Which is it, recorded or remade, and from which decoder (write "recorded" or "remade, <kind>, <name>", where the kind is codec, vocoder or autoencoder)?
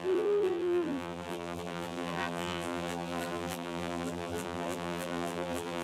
remade, vocoder, BigVGAN v2